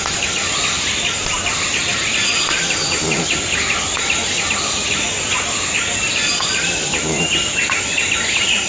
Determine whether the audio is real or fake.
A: real